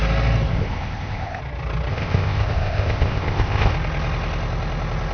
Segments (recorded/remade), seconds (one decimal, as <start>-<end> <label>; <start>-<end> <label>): 0.0-0.5 recorded; 0.5-1.4 remade; 1.4-1.9 recorded; 1.9-3.7 remade; 3.7-5.1 recorded